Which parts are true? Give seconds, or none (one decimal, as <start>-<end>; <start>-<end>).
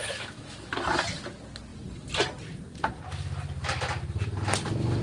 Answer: 0.7-5.0